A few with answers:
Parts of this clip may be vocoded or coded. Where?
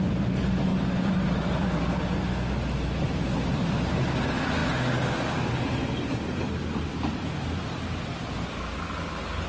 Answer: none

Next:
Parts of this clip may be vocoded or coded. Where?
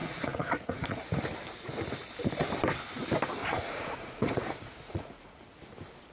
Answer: 0.0-1.0 (vocoder, Vocos); 3.4-5.4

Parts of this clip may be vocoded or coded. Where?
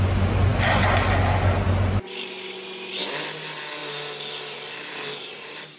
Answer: none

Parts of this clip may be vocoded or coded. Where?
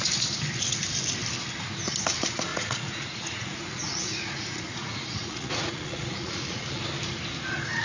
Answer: 2.5-6.8 (vocoder, Vocos)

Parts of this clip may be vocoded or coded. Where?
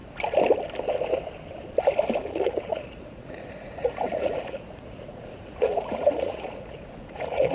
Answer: 2.3-7.5 (vocoder, Vocos)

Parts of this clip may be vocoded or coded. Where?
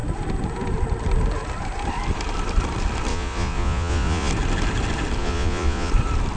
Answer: 3.1-4.3 (vocoder, Vocos); 5.2-5.9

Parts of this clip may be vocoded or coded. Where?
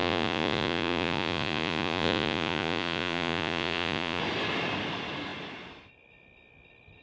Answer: 0.0-4.2 (vocoder, Vocos)